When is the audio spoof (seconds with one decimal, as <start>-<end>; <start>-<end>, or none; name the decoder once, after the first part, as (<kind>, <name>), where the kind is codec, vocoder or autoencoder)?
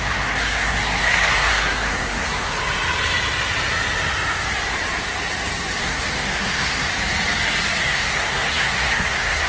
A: 0.0-2.5 (codec, SNAC); 5.8-6.9; 7.8-9.5